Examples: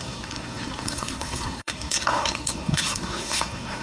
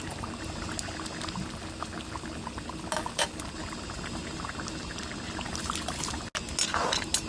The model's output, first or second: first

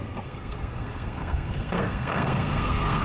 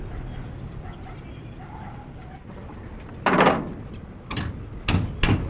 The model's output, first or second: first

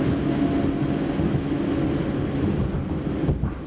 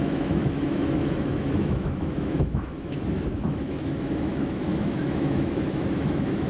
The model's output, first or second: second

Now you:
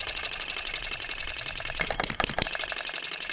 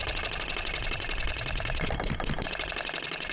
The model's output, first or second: first